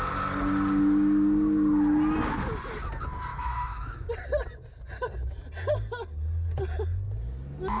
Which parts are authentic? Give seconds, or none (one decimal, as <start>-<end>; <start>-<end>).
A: 0.0-3.3; 4.1-7.8